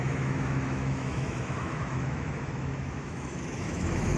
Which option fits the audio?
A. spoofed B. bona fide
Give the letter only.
A